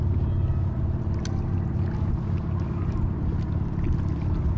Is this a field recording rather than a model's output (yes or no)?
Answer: yes